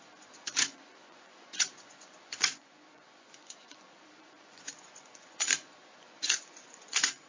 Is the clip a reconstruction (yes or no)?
yes